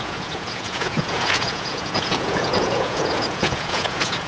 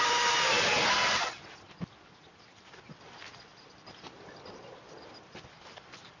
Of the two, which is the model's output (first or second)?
first